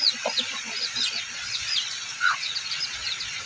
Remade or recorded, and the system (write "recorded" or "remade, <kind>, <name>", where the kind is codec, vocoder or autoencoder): remade, vocoder, Vocos